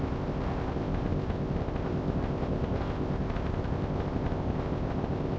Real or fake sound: fake